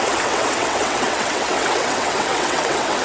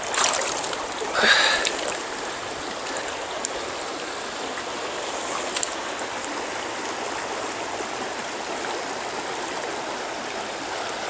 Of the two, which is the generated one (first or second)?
first